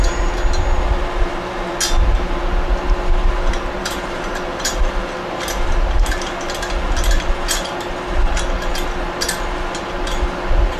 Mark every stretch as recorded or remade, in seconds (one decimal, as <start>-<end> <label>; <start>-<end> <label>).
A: 0.0-3.8 recorded; 3.8-4.8 remade; 4.8-10.8 recorded